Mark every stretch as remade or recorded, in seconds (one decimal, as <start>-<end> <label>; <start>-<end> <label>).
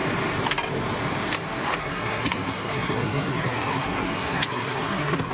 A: 0.0-1.8 recorded; 1.8-5.3 remade